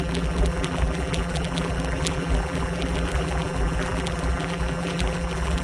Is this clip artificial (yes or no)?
yes